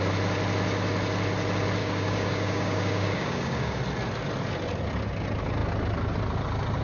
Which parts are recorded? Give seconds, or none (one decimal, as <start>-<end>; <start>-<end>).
0.0-1.8; 3.8-6.8